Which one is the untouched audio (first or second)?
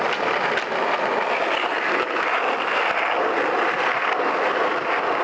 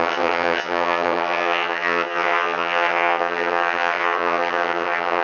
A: first